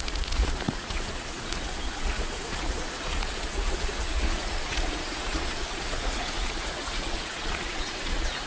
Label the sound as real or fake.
fake